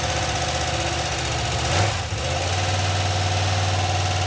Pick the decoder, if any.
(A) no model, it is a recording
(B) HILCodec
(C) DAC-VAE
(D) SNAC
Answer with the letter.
A